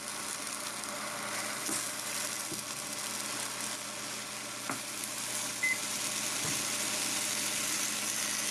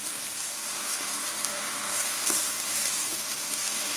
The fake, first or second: second